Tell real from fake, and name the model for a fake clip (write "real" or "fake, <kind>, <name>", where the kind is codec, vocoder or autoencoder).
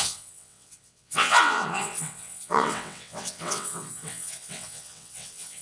fake, vocoder, WaveNeXt